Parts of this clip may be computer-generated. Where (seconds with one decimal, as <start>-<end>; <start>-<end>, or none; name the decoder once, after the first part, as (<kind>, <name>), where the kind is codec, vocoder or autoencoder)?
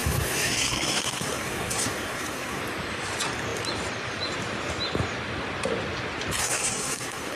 0.0-2.6 (codec, SNAC); 6.4-7.4